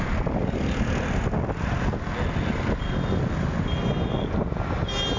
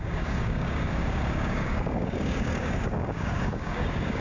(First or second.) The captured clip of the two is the first